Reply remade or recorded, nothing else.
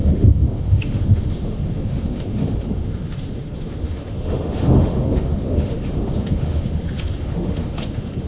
remade